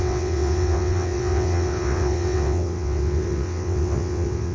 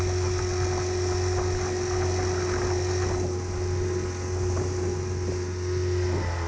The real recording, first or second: second